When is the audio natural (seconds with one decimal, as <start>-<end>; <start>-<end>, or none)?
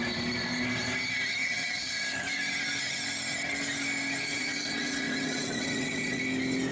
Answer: 0.0-1.4; 1.9-4.3; 6.2-6.7